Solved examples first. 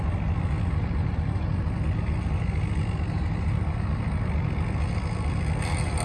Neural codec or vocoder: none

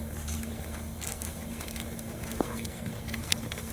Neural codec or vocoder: codec, SNAC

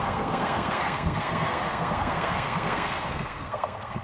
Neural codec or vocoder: codec, SNAC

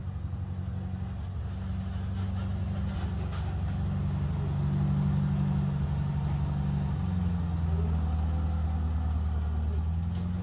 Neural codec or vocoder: none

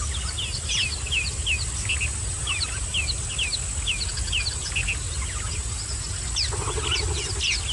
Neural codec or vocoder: none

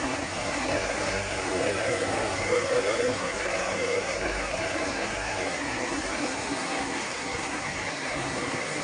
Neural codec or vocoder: codec, SNAC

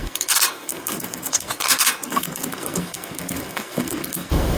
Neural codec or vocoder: codec, SNAC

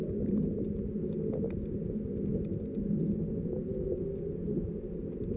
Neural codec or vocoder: none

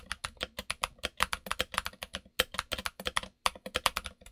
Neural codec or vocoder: none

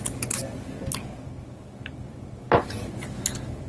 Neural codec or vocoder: none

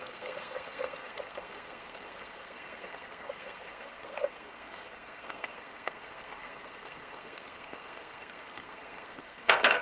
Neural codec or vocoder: codec, SNAC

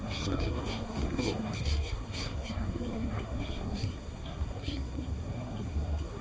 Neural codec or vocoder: codec, SNAC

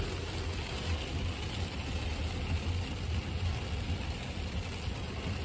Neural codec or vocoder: none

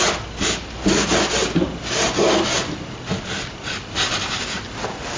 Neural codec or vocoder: none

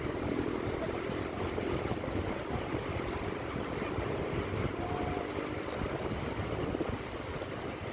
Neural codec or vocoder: none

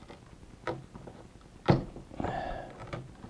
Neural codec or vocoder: none